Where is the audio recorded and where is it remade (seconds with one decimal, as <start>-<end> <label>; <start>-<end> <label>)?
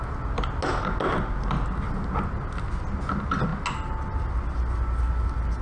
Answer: 0.0-5.6 recorded